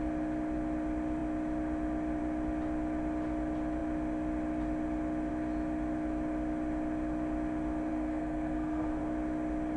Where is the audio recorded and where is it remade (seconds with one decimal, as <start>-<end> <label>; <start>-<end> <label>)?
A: 0.0-7.9 recorded; 7.9-9.0 remade; 9.0-9.8 recorded